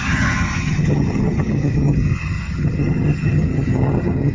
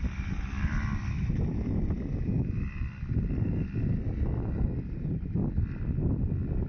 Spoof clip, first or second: first